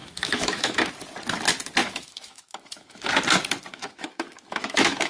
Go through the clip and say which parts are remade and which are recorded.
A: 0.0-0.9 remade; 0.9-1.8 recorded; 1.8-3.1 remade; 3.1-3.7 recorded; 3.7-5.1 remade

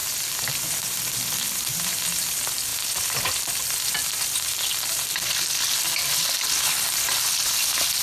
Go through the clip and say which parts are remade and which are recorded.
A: 0.0-8.0 recorded

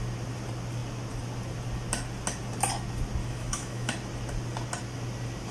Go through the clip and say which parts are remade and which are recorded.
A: 0.0-3.2 recorded; 3.2-3.9 remade; 3.9-5.5 recorded

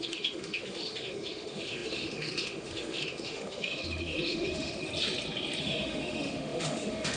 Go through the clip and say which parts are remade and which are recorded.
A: 0.0-4.9 remade; 4.9-5.6 recorded; 5.6-7.2 remade

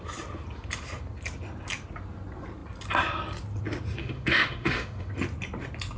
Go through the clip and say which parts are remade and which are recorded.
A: 0.0-4.0 recorded; 4.0-5.1 remade; 5.1-6.0 recorded

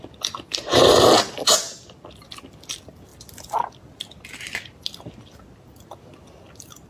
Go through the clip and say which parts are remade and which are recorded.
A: 0.0-6.9 recorded

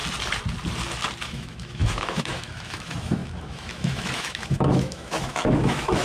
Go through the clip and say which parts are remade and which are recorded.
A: 0.0-1.2 recorded; 1.2-6.0 remade

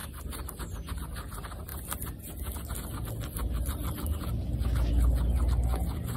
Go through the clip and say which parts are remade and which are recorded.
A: 0.0-6.2 recorded